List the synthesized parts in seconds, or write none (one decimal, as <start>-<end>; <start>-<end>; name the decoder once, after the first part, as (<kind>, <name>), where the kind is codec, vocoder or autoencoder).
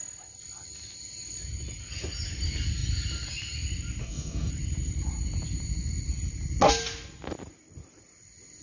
4.0-4.5 (codec, DAC)